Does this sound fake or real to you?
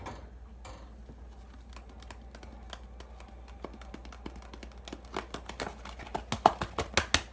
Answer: real